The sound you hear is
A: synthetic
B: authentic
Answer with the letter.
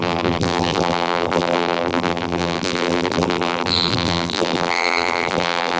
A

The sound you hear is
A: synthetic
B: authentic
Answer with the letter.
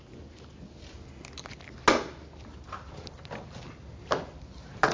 B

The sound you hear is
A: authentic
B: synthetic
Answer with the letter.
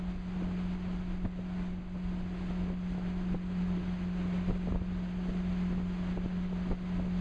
A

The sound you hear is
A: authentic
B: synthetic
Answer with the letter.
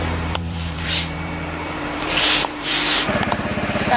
B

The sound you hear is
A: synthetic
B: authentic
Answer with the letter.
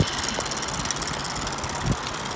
B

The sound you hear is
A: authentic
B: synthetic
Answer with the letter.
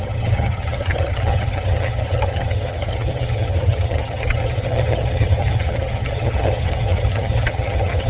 B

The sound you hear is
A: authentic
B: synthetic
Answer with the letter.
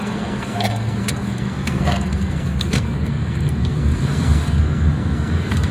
B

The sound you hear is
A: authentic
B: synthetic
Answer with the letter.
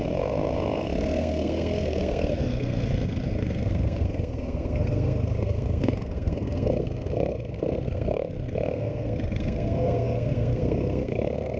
B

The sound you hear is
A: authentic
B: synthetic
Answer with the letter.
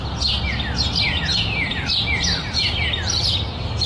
A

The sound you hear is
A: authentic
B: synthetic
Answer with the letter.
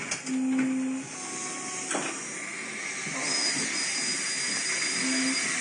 A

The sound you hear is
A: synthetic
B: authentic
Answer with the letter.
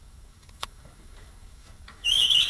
A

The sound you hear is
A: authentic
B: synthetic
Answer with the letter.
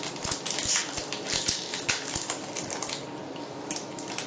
A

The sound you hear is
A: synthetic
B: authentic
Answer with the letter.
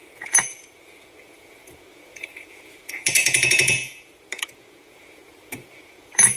A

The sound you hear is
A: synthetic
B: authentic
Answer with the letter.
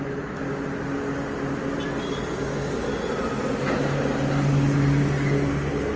B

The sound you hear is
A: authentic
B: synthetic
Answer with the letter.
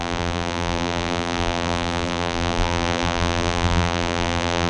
B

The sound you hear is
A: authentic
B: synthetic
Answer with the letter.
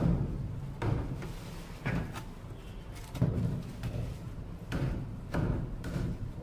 A